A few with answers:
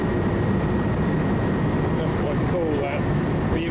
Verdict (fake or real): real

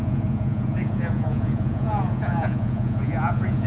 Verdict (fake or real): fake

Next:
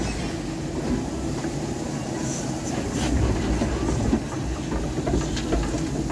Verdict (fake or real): real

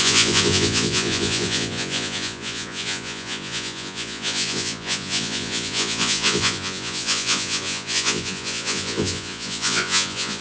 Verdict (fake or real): fake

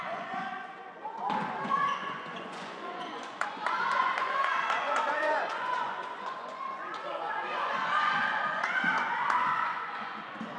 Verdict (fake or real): fake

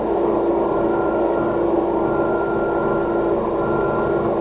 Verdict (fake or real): real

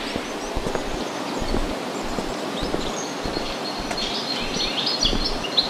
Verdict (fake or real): real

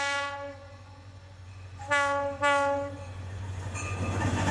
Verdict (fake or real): fake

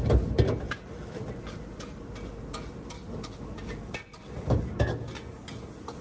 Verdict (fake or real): real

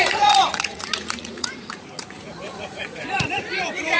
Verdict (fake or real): fake